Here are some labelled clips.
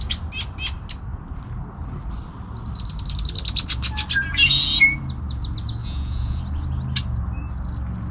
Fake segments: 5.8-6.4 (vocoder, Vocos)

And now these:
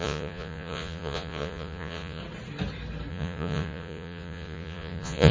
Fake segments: 0.0-2.2 (vocoder, Vocos); 3.1-5.3